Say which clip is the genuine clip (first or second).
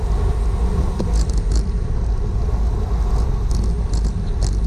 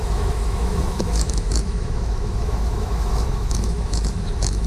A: first